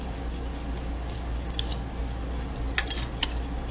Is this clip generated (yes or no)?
no